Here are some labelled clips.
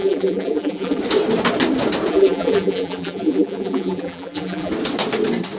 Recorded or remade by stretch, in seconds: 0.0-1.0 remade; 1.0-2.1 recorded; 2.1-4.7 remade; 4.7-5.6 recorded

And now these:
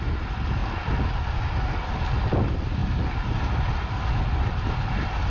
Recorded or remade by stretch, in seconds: 0.0-5.3 recorded

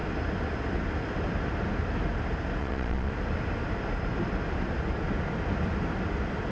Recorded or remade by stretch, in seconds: 0.0-2.6 recorded; 2.6-3.1 remade; 3.1-6.5 recorded

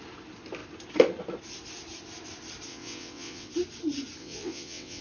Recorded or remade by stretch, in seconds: 0.0-2.7 recorded; 2.7-3.5 remade; 3.5-4.2 recorded; 4.2-5.0 remade

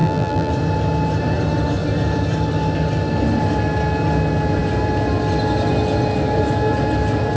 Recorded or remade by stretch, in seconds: 0.0-0.5 remade; 0.5-7.4 recorded

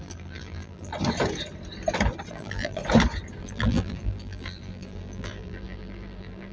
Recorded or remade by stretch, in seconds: 0.0-0.9 remade; 0.9-2.3 recorded; 2.3-2.8 remade; 2.8-3.4 recorded; 3.4-6.5 remade

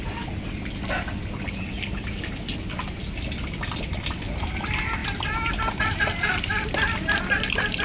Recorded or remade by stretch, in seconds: 0.0-7.8 recorded